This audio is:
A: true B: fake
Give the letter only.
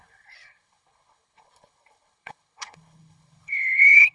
B